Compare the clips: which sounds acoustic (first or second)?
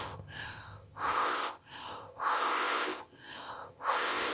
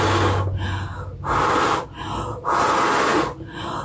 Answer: second